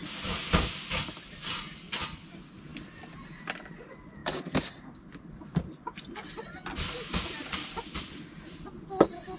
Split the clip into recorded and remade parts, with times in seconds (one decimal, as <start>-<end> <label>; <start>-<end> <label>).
0.0-9.4 recorded